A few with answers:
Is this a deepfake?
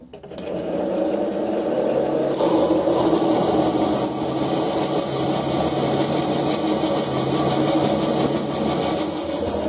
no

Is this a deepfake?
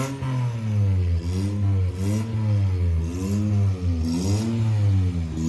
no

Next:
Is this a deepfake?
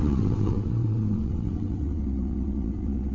yes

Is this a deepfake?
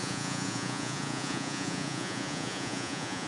yes